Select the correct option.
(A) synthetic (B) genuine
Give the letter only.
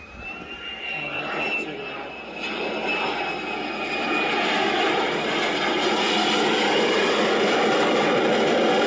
B